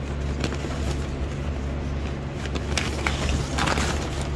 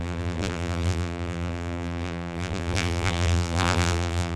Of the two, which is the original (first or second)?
first